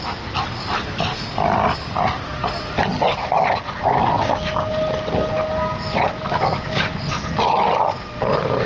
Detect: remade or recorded recorded